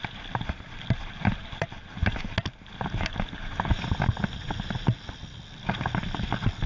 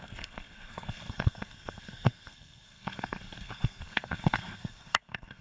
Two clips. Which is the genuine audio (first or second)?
first